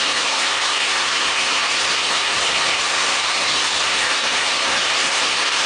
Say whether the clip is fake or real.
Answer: fake